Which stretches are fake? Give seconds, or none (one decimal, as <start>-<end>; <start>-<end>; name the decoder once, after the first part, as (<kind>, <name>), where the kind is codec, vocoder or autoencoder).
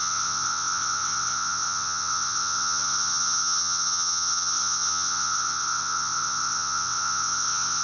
0.0-7.8 (vocoder, WaveNeXt)